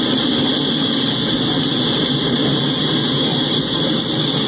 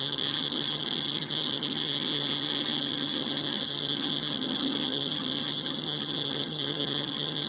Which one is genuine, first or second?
first